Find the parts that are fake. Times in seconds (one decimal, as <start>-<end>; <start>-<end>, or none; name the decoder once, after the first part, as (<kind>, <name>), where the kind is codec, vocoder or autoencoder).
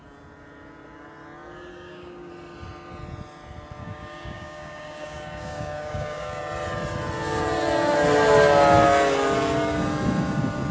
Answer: 1.7-2.3 (codec, DAC); 3.8-6.4